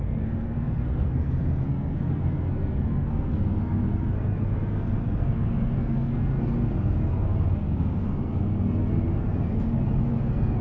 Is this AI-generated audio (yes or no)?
yes